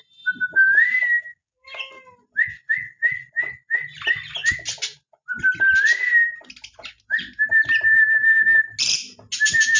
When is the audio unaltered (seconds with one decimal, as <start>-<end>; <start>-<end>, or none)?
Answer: 0.0-1.0; 1.8-9.8